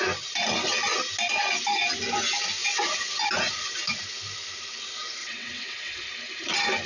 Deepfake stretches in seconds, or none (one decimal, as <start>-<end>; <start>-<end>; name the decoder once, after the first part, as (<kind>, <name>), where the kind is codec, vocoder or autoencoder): 2.6-3.2 (vocoder, WaveNeXt); 5.2-6.0